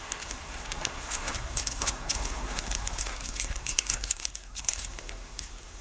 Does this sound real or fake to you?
fake